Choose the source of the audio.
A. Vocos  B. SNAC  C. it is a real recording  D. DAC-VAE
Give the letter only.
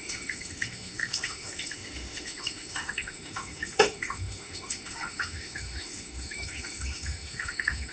D